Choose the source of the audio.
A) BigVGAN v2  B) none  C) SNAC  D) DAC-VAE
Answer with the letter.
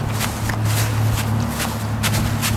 B